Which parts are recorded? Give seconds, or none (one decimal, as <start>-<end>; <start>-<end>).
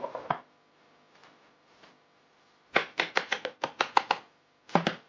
0.0-5.1